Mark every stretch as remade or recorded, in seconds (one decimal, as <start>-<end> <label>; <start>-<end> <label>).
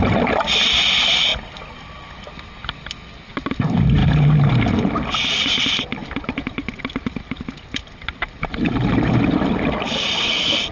0.0-10.7 recorded